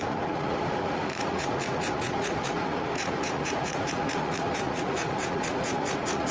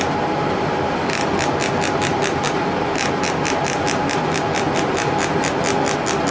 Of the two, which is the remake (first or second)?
first